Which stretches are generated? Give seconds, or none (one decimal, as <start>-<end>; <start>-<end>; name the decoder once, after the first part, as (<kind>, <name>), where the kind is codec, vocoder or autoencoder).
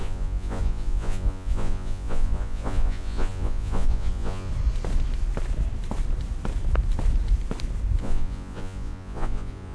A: 0.0-4.5 (vocoder, Vocos); 8.0-9.7